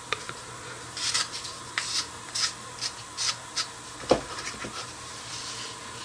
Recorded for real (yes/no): yes